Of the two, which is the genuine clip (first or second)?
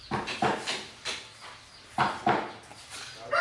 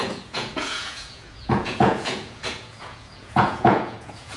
first